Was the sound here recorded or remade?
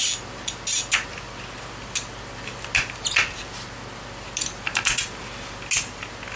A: recorded